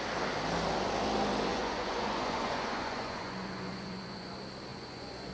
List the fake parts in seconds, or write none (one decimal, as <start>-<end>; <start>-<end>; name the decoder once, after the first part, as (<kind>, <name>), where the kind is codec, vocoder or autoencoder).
1.5-4.3 (vocoder, Vocos); 4.7-5.3